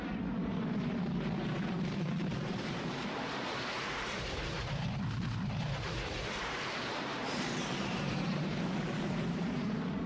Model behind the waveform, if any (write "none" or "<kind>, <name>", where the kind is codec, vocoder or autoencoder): vocoder, BigVGAN v2